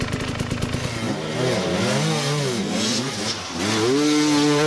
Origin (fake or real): real